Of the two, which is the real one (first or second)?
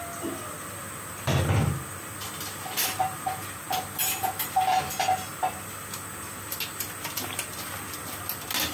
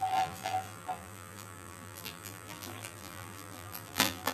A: first